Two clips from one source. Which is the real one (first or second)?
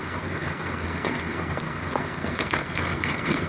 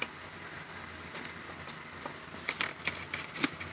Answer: second